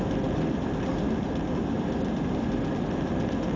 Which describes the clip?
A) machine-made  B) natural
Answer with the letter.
B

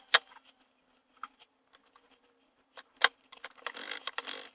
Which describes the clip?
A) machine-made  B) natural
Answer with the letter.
B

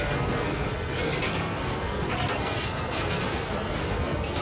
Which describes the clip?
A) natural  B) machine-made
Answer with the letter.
B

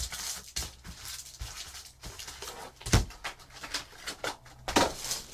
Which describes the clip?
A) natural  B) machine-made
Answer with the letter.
A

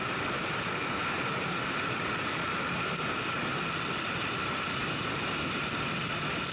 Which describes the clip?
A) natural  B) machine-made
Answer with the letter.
A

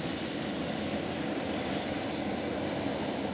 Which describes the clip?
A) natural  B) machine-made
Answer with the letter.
A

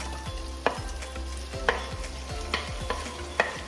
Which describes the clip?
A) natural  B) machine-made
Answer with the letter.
A